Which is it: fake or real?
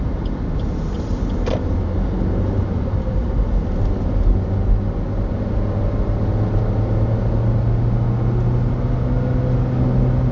real